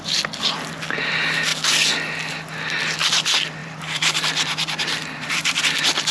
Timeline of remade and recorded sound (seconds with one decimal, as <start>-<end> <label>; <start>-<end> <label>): 0.0-3.6 recorded; 3.6-5.6 remade; 5.6-6.1 recorded